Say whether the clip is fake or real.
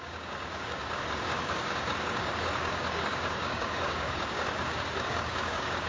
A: fake